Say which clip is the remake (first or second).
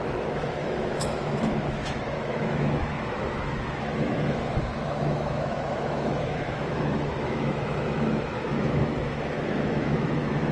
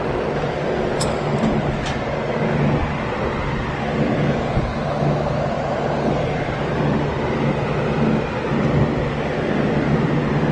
first